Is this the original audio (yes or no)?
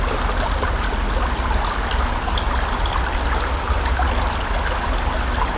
yes